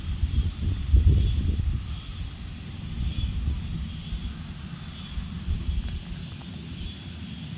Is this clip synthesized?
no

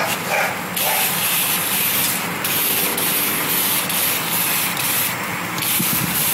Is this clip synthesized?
no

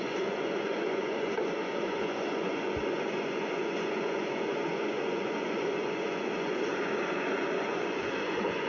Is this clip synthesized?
yes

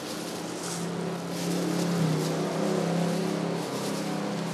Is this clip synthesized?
no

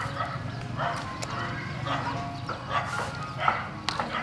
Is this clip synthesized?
no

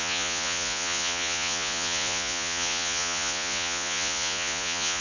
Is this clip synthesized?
yes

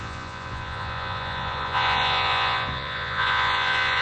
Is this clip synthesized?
yes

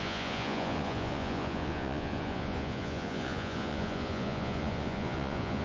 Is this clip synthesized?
yes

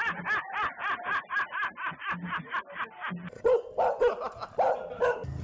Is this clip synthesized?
no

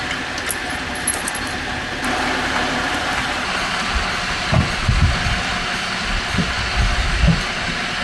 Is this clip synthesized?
no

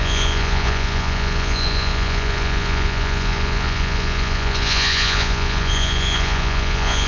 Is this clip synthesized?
yes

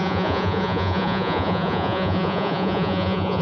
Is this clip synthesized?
yes